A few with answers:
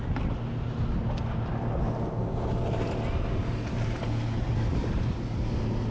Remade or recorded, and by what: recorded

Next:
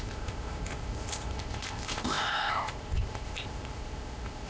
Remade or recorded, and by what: remade, codec, ZipCodec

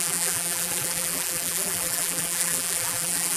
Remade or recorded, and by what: remade, vocoder, BigVGAN v2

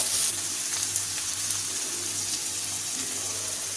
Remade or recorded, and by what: recorded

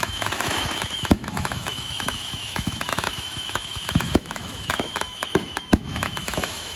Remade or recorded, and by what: remade, autoencoder, DAC-VAE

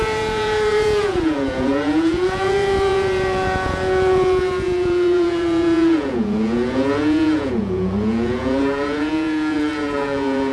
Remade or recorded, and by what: remade, vocoder, Vocos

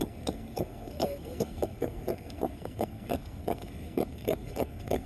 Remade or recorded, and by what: remade, codec, SNAC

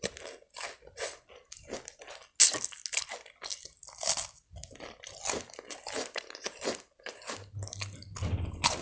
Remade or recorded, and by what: recorded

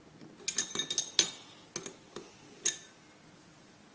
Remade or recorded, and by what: recorded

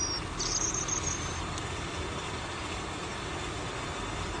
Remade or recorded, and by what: recorded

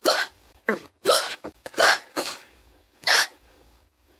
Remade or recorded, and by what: remade, codec, DAC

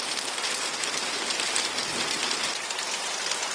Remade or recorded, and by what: recorded